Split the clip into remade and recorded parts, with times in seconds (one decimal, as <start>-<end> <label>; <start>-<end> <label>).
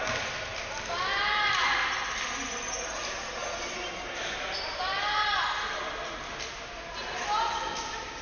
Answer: 0.0-8.2 recorded